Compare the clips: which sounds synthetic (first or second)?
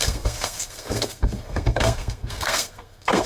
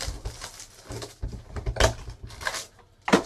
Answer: first